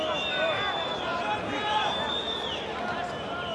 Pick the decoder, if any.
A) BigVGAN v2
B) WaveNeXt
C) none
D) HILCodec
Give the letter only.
C